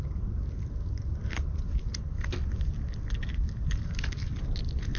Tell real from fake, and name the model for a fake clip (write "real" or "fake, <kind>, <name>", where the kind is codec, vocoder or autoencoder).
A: real